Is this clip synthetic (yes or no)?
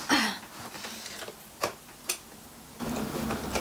no